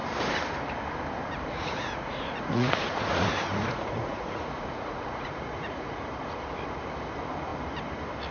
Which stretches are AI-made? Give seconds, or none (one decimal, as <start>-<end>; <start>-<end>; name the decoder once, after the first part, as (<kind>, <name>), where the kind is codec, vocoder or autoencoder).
1.2-6.0 (vocoder, Vocos)